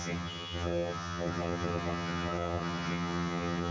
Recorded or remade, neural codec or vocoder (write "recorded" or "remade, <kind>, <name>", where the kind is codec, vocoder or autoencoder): remade, vocoder, HiFi-GAN